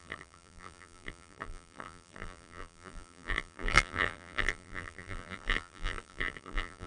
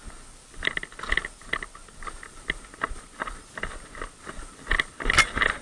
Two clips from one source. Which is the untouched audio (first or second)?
second